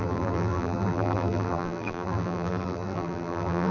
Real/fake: fake